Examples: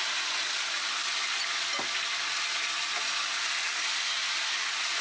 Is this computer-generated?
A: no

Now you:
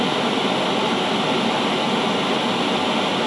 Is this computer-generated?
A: no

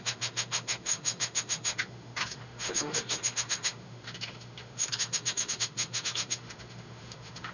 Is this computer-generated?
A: yes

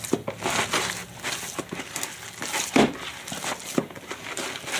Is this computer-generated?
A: no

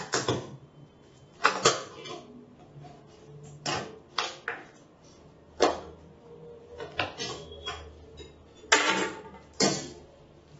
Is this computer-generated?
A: no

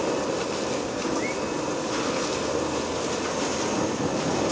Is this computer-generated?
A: no